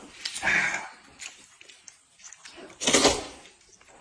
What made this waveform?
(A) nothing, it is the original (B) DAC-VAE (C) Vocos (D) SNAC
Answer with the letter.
A